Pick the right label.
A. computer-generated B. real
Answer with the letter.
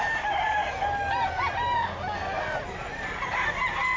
B